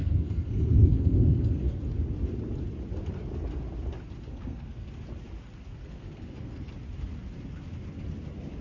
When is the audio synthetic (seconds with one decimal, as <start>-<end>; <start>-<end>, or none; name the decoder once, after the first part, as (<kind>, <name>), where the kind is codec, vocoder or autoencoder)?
0.0-1.8 (codec, SNAC); 4.3-4.9; 5.8-6.7